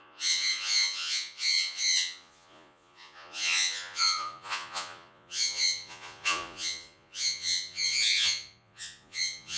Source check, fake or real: fake